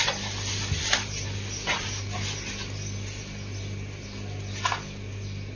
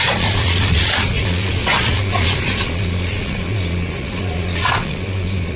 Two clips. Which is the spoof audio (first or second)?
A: second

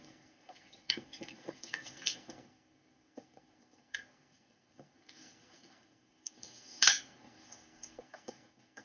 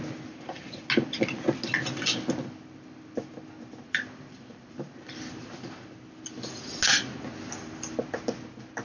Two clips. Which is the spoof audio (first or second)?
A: first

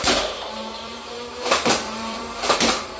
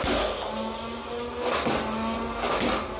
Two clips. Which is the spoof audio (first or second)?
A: first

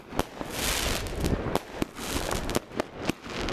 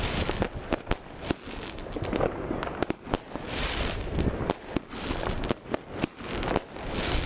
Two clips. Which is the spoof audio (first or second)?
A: second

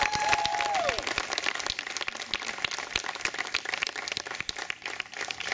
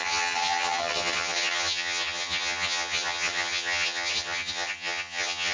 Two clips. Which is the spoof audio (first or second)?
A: second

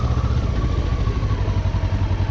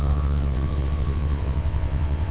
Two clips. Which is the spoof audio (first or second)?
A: second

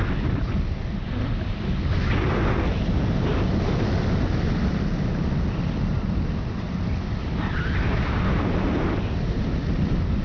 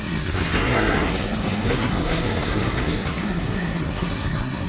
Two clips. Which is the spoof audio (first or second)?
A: second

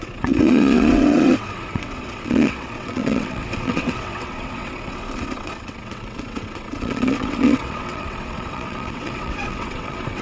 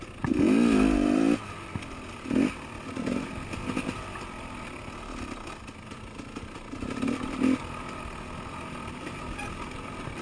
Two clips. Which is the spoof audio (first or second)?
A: first